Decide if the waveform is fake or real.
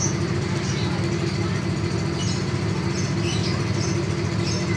real